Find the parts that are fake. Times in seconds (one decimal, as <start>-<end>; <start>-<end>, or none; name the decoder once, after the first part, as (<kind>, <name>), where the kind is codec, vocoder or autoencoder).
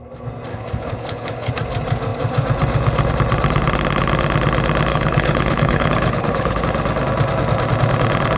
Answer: 0.5-1.5 (codec, HILCodec); 4.9-6.6